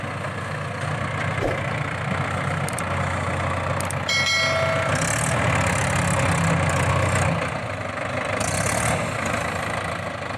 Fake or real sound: real